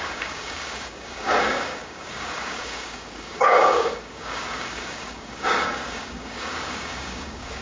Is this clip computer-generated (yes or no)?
yes